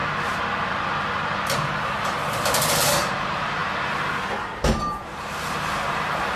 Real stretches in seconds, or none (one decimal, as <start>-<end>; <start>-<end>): 0.0-2.0; 3.6-4.4